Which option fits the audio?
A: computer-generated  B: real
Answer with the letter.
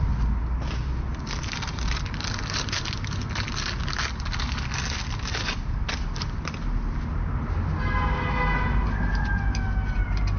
B